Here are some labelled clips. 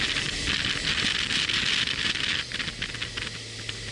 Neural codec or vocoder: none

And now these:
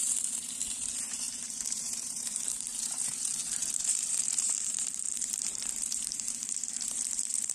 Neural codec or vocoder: vocoder, BigVGAN v2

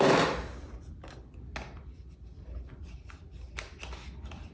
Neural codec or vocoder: none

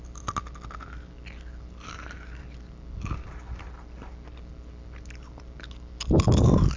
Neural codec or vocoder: none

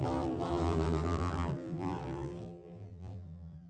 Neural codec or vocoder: vocoder, BigVGAN v2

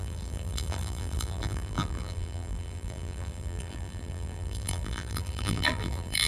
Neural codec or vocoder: vocoder, BigVGAN v2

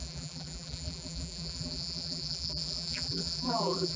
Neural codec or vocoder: vocoder, BigVGAN v2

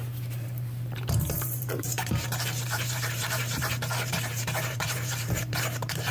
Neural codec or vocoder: vocoder, BigVGAN v2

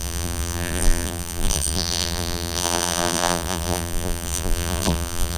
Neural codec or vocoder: vocoder, BigVGAN v2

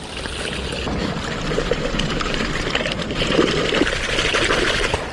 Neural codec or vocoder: vocoder, BigVGAN v2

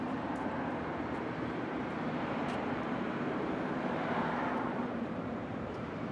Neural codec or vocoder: vocoder, BigVGAN v2